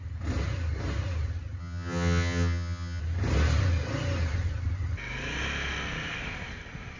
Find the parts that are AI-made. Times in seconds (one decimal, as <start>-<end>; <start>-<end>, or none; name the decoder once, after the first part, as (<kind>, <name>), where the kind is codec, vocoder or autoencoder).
1.6-3.0 (vocoder, HiFi-GAN)